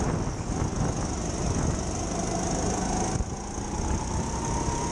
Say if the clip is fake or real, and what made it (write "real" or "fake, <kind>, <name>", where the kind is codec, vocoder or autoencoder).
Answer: real